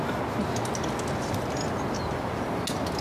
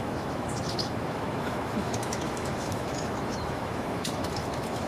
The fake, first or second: second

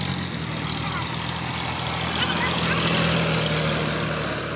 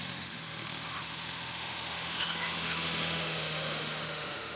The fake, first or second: second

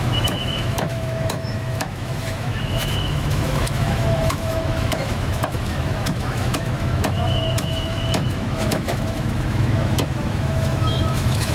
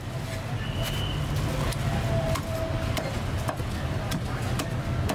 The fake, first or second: first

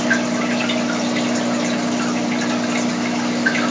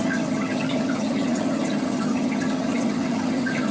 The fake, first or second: second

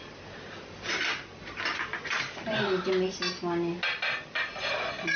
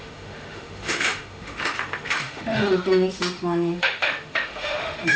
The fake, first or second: second